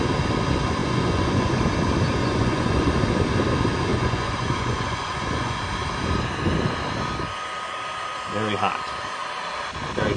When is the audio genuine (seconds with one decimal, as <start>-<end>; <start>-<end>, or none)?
0.0-0.8; 1.6-2.2; 2.9-3.9; 5.6-10.2